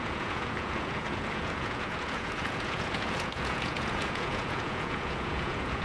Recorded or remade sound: remade